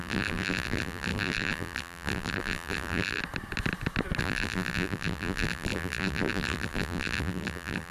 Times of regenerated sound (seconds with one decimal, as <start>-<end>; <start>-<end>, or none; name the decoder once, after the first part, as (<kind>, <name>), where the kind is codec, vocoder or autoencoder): 0.0-3.2 (vocoder, BigVGAN v2); 4.2-7.9

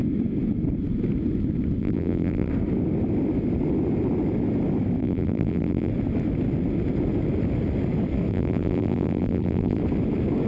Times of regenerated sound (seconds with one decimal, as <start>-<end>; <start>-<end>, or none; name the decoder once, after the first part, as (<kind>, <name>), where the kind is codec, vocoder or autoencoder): 1.8-2.5 (vocoder, BigVGAN v2); 5.0-5.9; 8.3-9.8